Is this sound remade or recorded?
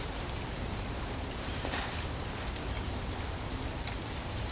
remade